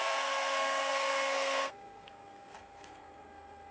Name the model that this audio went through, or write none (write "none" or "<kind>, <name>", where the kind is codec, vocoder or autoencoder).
codec, SNAC